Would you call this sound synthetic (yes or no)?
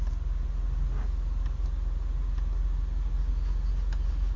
no